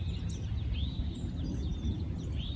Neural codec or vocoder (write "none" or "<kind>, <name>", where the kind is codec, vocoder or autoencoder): none